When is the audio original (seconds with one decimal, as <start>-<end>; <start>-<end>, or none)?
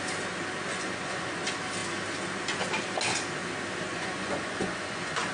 0.0-0.7; 1.4-3.9